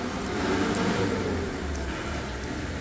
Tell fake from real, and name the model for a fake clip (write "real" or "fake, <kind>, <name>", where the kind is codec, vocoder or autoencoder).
real